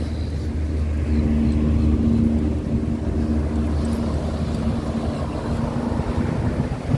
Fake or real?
real